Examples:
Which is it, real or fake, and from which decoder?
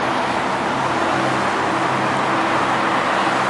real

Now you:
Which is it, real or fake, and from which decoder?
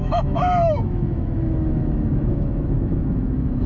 fake, autoencoder, DAC-VAE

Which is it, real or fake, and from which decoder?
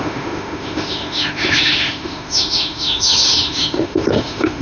fake, autoencoder, DAC-VAE